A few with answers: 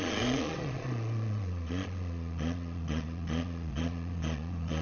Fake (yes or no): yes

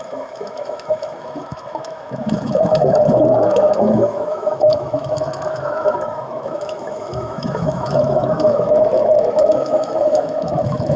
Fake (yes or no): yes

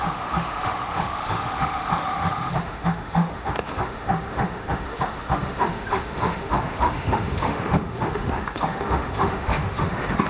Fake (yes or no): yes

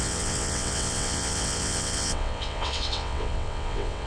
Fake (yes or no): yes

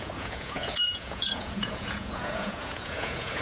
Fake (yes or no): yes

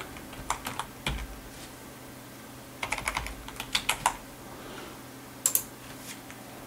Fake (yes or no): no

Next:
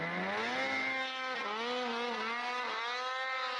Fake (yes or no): no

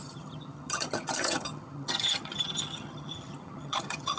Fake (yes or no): yes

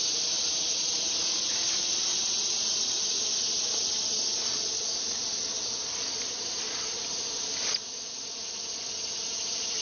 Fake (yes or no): no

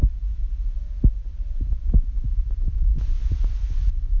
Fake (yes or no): no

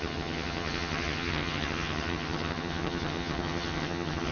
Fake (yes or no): yes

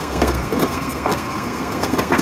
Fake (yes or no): yes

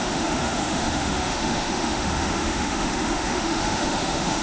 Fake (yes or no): yes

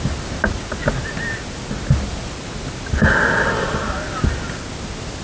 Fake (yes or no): no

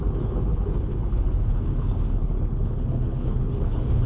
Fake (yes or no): yes